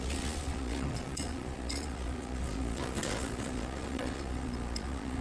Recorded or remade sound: remade